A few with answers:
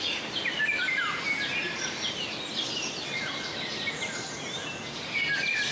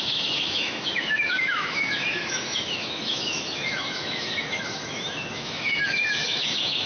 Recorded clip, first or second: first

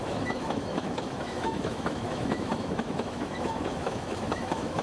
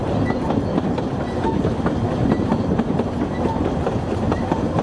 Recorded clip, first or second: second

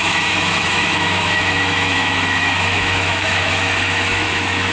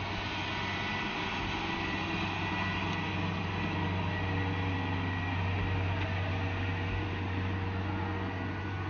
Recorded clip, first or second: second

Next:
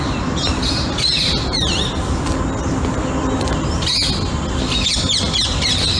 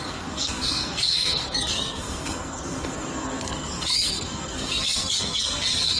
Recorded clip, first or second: first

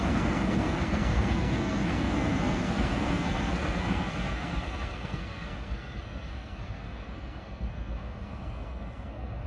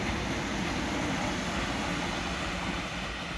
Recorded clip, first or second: second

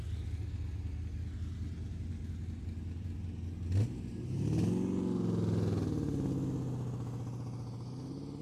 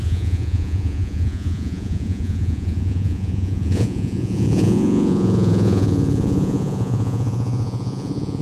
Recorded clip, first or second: first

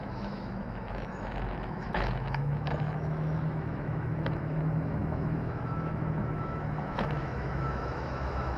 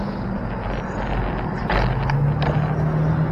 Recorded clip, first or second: second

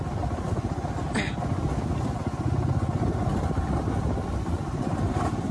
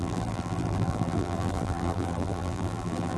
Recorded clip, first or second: first